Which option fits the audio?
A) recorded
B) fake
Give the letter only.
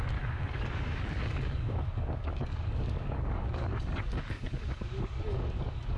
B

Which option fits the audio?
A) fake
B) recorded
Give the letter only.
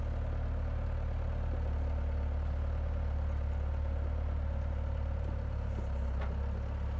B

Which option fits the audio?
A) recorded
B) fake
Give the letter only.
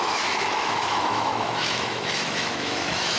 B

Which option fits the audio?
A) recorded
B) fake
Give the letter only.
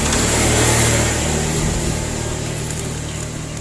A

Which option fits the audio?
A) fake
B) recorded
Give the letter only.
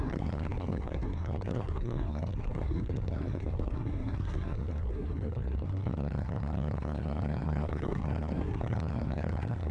A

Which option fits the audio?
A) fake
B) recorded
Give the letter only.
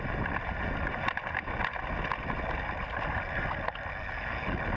B